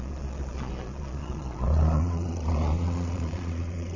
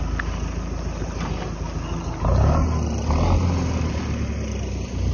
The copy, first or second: first